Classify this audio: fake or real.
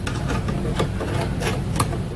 real